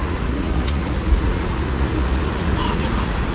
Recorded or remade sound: remade